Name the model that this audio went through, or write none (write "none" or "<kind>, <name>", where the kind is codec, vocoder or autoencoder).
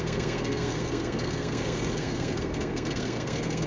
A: codec, SNAC